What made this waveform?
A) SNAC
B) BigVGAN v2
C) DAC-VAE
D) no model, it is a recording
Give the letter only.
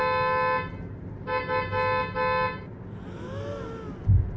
D